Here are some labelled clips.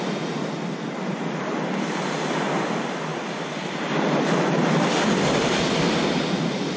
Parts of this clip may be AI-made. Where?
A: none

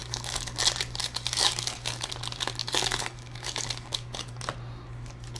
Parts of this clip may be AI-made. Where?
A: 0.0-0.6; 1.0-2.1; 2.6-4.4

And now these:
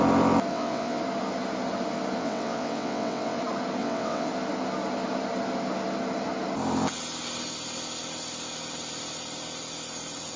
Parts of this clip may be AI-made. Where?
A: 0.5-1.0; 2.2-3.4; 3.8-4.3